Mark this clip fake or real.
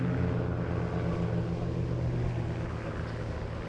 real